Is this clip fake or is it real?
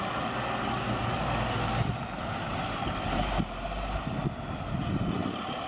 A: real